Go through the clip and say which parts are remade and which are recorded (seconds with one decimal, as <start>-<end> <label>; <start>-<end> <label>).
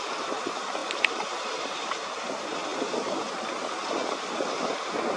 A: 0.0-0.8 recorded; 0.8-2.3 remade; 2.3-5.2 recorded